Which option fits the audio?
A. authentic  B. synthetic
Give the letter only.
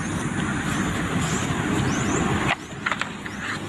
B